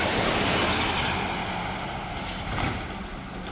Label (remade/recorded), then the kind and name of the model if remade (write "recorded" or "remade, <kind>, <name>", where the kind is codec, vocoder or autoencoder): recorded